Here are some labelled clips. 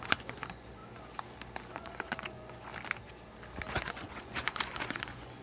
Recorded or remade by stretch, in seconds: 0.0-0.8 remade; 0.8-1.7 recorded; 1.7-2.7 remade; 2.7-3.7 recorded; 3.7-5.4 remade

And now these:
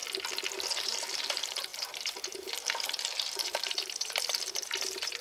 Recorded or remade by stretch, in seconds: 0.0-0.8 recorded; 0.8-5.2 remade

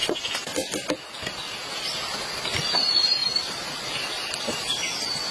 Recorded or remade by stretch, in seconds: 0.0-3.2 recorded; 3.2-5.3 remade